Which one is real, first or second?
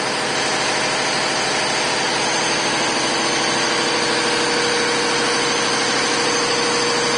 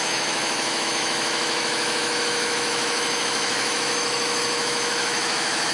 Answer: first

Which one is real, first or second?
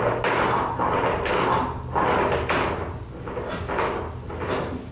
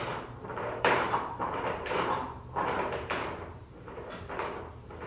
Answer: first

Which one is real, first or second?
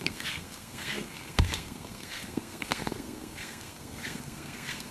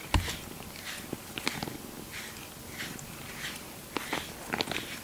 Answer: second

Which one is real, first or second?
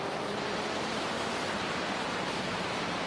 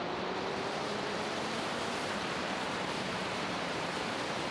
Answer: first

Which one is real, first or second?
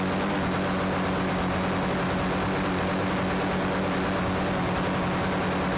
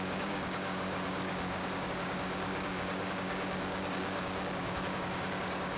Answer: first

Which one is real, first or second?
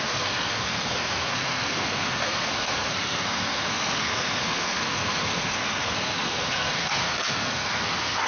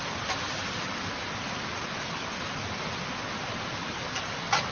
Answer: second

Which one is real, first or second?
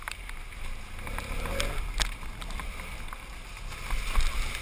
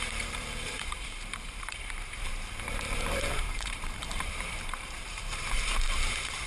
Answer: first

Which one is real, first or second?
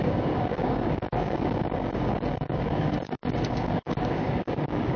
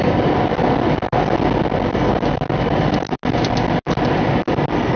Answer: second